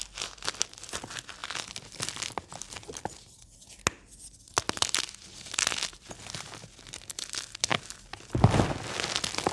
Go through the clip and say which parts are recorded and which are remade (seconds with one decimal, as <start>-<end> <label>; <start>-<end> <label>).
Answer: 0.0-9.5 recorded